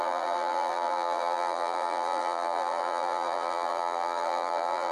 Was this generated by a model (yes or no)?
yes